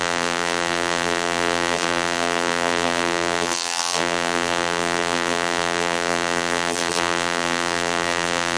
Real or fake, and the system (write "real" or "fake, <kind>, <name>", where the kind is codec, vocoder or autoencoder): fake, vocoder, BigVGAN v2